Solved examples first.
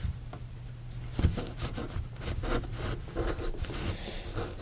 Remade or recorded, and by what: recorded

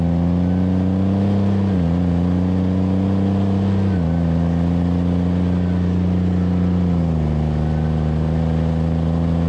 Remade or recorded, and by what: recorded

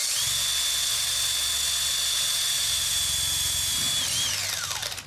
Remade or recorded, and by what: recorded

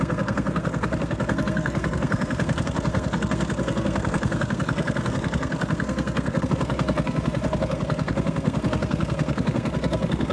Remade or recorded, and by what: remade, codec, SNAC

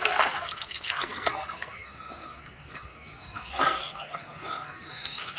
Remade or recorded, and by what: remade, codec, SNAC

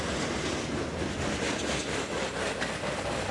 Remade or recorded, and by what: recorded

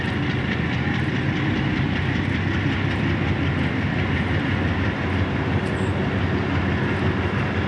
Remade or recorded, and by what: recorded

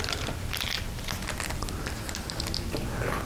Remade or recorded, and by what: recorded